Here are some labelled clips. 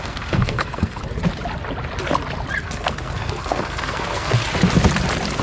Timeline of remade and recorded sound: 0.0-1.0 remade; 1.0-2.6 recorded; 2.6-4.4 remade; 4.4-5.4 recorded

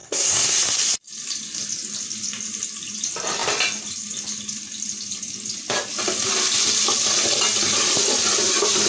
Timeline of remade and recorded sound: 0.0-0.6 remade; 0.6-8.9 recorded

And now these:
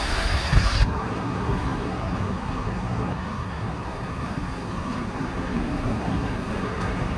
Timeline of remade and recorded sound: 0.0-7.2 remade